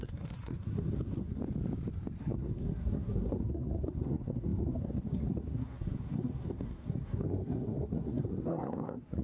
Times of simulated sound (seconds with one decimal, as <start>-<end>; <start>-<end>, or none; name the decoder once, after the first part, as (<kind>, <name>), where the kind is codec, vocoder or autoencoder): 0.0-1.4 (codec, SNAC); 2.2-9.2